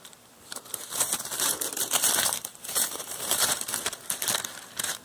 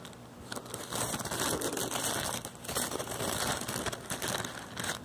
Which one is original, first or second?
second